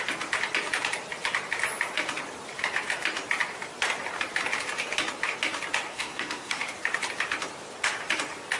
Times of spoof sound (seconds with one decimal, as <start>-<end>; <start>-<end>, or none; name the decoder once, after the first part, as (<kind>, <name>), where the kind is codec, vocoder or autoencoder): 5.9-6.6 (codec, SNAC)